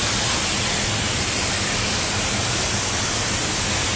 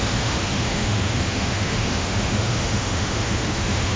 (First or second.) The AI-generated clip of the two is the second